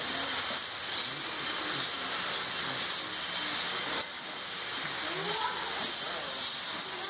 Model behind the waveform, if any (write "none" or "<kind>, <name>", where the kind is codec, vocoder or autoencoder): none